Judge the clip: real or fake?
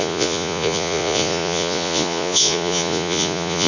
fake